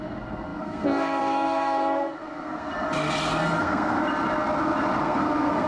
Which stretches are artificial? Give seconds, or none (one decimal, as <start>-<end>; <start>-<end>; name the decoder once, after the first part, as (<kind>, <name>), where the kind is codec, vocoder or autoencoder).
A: 0.0-2.7 (codec, SNAC); 3.6-4.0; 5.0-5.7